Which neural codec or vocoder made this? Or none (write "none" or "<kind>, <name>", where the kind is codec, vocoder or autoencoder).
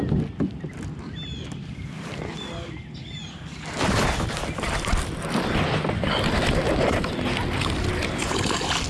none